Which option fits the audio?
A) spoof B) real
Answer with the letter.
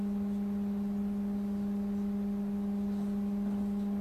B